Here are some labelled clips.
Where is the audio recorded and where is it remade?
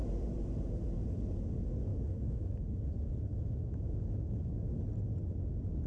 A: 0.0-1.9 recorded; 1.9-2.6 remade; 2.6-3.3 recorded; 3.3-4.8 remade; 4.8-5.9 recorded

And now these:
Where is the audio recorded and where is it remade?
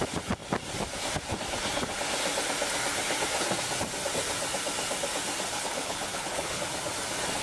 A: 0.0-5.5 recorded; 5.5-6.6 remade; 6.6-7.4 recorded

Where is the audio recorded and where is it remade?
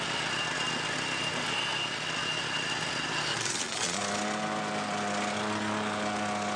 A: 0.0-3.3 recorded; 3.3-4.0 remade; 4.0-6.6 recorded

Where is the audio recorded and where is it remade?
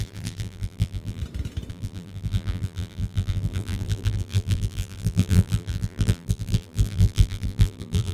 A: 0.0-1.2 remade; 1.2-1.7 recorded; 1.7-8.1 remade